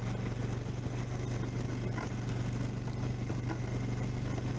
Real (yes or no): yes